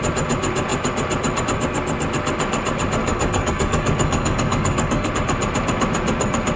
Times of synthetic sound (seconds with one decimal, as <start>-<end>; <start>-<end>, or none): 3.0-5.1